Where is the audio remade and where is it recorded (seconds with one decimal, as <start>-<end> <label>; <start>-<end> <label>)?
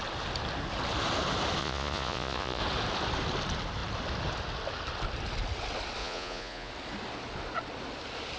0.0-1.6 recorded; 1.6-2.6 remade; 2.6-6.0 recorded; 6.0-6.7 remade; 6.7-8.4 recorded